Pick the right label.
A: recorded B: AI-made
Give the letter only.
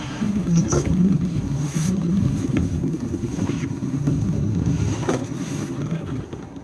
B